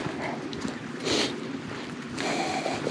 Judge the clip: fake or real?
real